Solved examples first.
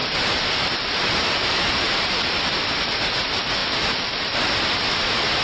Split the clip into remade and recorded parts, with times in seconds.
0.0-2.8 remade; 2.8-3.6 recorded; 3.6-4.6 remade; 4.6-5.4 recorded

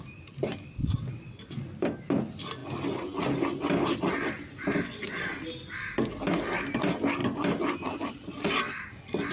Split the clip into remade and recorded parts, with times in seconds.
0.0-0.8 recorded; 0.8-1.6 remade; 1.6-9.3 recorded

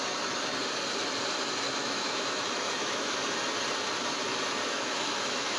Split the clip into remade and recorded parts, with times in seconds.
0.0-1.8 recorded; 1.8-3.3 remade; 3.3-4.6 recorded; 4.6-5.6 remade

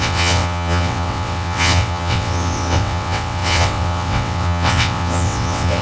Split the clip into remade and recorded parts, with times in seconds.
0.0-5.8 remade

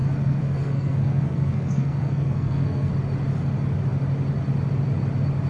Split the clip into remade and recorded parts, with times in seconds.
0.0-2.9 remade; 2.9-5.5 recorded